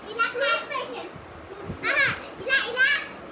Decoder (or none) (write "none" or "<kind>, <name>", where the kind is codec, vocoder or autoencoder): none